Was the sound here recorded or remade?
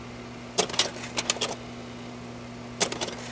recorded